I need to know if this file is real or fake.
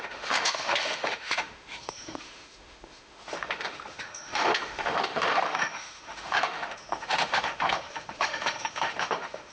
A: fake